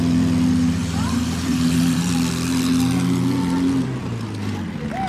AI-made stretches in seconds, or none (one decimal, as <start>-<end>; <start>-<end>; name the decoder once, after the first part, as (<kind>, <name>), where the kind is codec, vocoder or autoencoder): 0.8-2.1 (vocoder, BigVGAN v2)